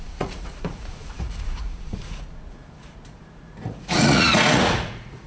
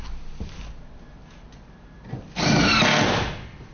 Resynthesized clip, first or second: first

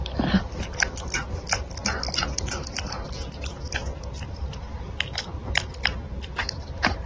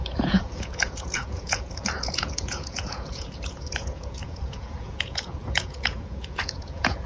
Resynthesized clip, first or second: second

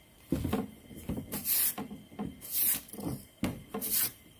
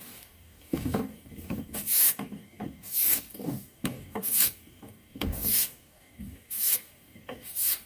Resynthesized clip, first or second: second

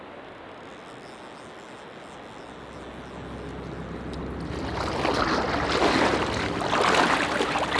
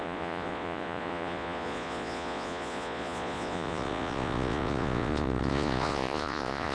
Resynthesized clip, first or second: second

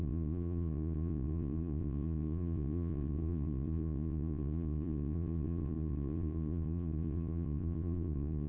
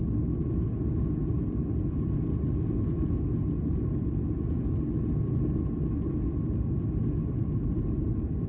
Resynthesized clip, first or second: first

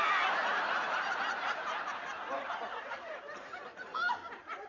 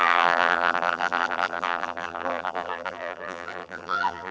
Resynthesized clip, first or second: second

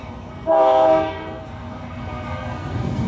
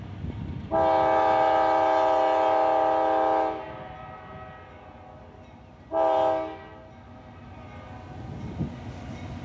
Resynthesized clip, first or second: first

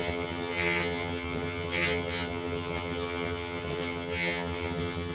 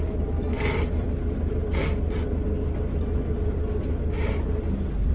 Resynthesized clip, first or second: first